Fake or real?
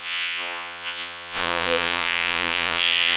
fake